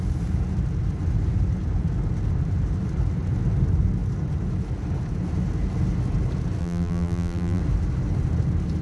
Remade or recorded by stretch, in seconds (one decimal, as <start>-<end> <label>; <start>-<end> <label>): 0.0-6.6 recorded; 6.6-7.6 remade; 7.6-8.8 recorded

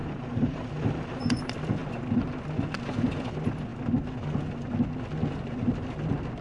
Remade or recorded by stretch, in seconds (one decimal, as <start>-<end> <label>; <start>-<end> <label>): 0.0-1.4 remade; 1.4-6.4 recorded